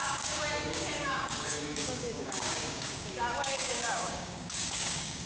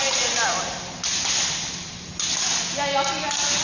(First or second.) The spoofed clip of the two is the first